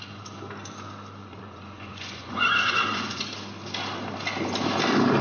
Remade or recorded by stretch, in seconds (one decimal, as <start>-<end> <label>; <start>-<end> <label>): 0.0-1.2 recorded; 1.2-3.2 remade; 3.2-5.2 recorded